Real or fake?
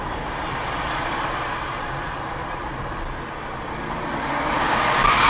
real